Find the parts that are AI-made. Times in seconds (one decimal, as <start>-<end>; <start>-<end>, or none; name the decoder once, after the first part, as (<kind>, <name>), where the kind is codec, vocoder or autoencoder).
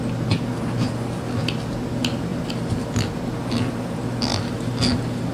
4.3-5.3 (vocoder, BigVGAN v2)